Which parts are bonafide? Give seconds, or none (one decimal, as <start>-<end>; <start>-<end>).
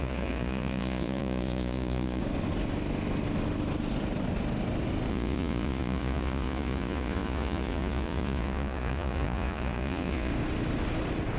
2.2-5.1; 10.3-11.4